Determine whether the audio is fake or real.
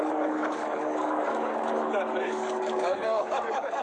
fake